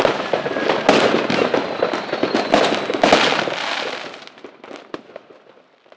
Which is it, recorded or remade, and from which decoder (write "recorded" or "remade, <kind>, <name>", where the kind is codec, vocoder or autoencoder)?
recorded